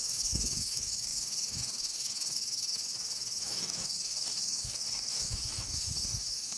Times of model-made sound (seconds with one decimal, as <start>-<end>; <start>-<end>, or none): 0.0-6.6